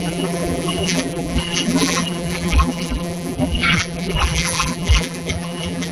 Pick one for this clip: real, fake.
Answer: fake